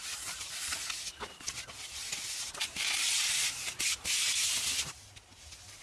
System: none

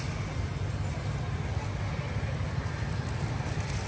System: none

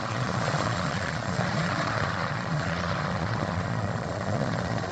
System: vocoder, Vocos